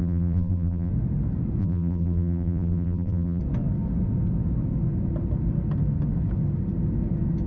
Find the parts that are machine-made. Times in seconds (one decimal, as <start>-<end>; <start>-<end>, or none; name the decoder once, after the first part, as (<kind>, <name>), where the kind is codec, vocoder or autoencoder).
0.0-0.9 (vocoder, BigVGAN v2); 1.6-3.4